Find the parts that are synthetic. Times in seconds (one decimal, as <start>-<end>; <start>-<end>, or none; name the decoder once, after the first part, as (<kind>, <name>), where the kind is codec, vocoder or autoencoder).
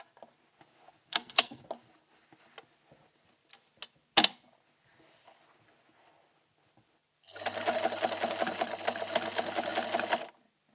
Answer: 1.1-1.6 (codec, SNAC)